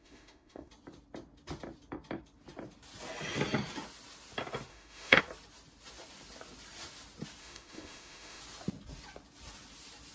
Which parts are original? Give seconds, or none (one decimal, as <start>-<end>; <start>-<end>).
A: 0.7-4.7; 5.2-7.4; 8.4-10.1